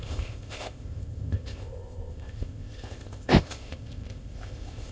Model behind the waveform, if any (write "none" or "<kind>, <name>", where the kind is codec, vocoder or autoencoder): codec, ZipCodec